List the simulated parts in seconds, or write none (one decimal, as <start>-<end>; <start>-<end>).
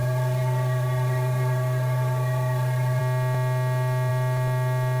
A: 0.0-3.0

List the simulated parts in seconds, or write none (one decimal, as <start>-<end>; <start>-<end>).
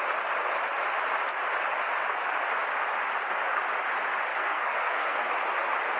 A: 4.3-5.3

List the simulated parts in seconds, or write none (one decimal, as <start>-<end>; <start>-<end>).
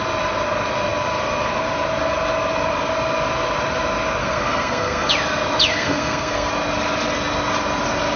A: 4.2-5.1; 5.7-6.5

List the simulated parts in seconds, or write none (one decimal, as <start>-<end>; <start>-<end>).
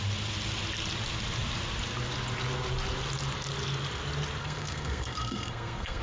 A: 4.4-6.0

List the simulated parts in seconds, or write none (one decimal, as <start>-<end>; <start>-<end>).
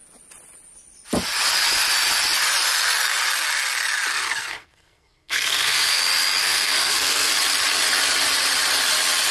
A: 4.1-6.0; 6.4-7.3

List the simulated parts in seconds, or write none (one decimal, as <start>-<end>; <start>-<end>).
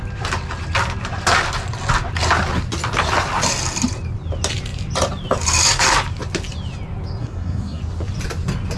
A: 7.2-7.8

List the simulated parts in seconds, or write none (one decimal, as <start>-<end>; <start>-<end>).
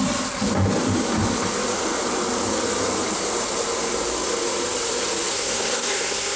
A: 5.3-6.4